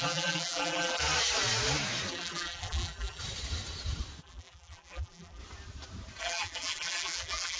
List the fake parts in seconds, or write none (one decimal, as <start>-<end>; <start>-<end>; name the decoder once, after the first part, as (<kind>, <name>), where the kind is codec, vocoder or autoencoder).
0.0-1.0 (vocoder, BigVGAN v2); 2.1-3.2; 4.2-5.4; 6.2-7.6